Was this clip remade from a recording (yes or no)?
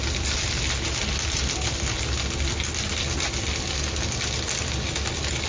no